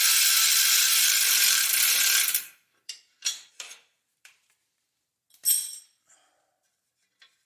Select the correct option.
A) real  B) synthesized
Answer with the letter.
B